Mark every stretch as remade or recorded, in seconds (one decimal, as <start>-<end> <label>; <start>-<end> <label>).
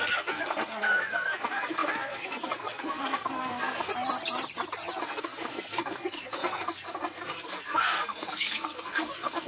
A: 0.0-3.9 remade; 3.9-5.0 recorded; 5.0-9.5 remade